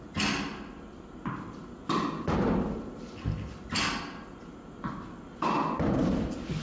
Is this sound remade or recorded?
recorded